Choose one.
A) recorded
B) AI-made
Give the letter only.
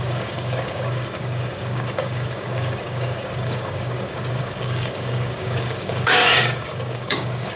B